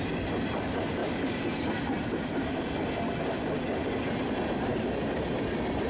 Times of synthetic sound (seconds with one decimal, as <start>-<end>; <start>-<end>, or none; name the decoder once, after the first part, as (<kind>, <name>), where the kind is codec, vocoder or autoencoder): 1.0-2.6 (vocoder, BigVGAN v2)